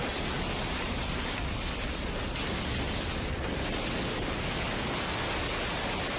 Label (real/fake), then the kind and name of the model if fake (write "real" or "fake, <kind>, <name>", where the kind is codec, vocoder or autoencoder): real